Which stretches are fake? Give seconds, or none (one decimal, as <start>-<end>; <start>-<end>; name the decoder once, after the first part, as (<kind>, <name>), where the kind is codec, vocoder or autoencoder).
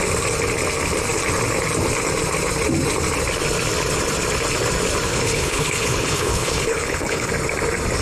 5.1-7.3 (codec, HILCodec)